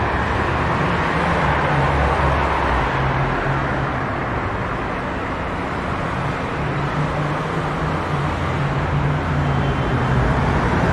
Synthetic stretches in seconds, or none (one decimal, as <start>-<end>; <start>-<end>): none

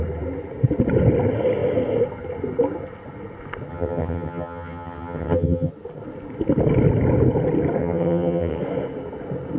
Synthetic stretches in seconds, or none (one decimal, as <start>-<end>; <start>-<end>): 3.7-5.7; 7.8-8.6